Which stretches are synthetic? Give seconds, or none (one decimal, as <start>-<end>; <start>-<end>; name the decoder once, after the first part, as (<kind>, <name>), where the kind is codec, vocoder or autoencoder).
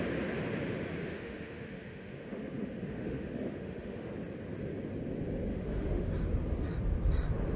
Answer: 1.0-4.1 (autoencoder, DAC-VAE); 5.5-6.1